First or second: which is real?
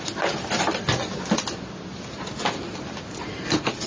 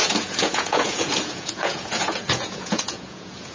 first